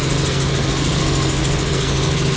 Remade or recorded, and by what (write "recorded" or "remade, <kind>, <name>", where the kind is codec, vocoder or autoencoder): remade, codec, SNAC